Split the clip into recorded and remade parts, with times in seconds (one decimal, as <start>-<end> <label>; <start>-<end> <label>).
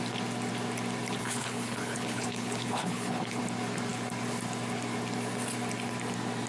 0.0-1.2 recorded; 1.2-3.4 remade; 3.4-6.5 recorded